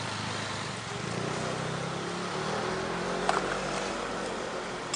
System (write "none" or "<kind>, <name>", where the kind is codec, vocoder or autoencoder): none